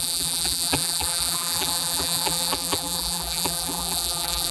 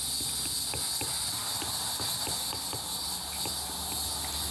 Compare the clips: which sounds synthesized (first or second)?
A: first